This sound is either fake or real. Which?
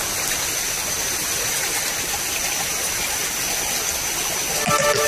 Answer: real